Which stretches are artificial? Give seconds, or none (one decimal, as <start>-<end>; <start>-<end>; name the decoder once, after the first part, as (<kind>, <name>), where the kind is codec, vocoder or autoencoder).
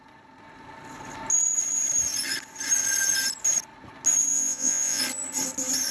4.3-5.0 (vocoder, Vocos)